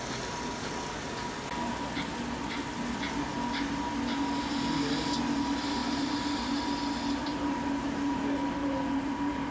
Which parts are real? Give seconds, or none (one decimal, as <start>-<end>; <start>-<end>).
0.0-5.8; 6.6-7.3; 8.2-8.6

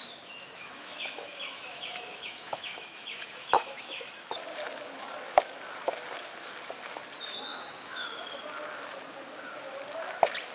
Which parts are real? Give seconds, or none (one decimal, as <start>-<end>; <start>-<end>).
4.1-7.5; 8.4-10.5

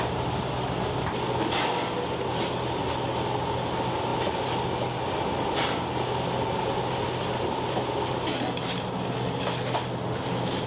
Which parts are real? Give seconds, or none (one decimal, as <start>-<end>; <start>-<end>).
0.0-10.7

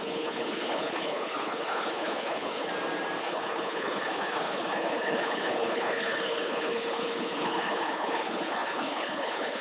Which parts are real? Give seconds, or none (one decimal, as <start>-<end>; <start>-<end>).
2.7-3.2

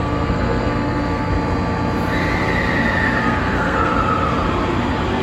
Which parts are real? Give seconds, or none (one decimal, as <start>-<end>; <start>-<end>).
1.3-3.2; 3.9-5.2

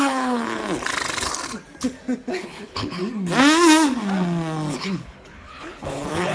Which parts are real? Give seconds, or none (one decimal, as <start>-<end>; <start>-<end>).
0.6-2.3; 3.0-4.7

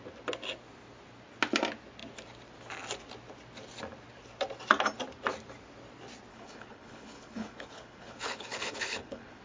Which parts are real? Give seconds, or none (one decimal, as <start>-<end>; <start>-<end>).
0.0-6.3